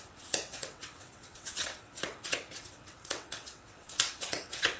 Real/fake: fake